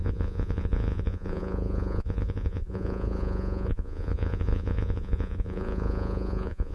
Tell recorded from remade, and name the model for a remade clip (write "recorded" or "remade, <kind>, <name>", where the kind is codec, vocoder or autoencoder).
remade, vocoder, Vocos